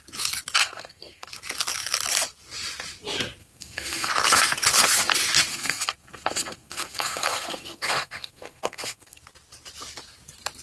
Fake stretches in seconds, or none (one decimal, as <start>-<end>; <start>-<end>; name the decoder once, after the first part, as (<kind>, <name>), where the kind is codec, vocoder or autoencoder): 0.6-1.3 (codec, SNAC); 3.4-4.1; 5.5-9.2